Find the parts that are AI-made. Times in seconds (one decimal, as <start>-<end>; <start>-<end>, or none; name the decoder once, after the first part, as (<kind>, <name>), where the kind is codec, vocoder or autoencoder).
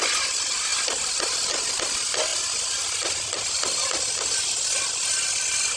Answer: none